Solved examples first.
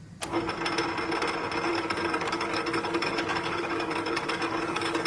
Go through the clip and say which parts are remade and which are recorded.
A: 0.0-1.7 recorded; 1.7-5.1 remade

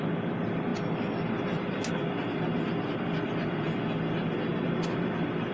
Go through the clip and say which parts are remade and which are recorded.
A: 0.0-5.5 recorded

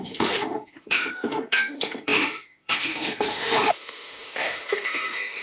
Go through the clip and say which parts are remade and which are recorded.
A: 0.0-5.4 remade